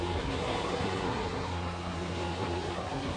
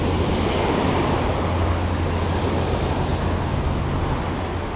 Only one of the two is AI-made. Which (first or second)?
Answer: first